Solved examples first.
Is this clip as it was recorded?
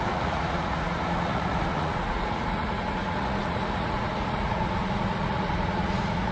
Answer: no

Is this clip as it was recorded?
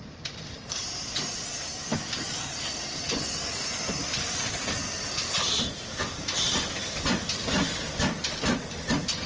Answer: yes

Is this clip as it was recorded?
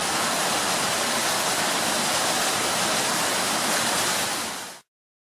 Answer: yes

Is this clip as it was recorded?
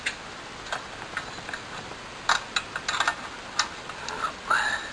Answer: yes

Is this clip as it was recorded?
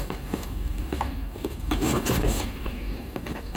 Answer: no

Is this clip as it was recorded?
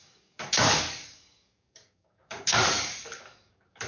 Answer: no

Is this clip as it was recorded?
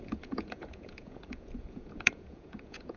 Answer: no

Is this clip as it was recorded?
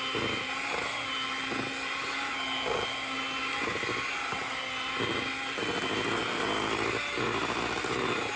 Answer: yes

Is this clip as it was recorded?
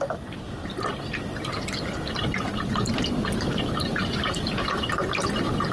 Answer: yes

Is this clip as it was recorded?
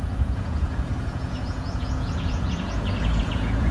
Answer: no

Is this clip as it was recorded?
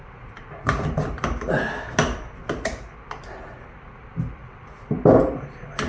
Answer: yes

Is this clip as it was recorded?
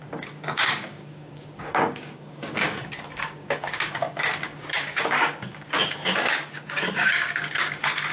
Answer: no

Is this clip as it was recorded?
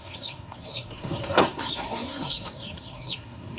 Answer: no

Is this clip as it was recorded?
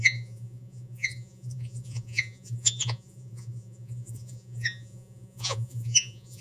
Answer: no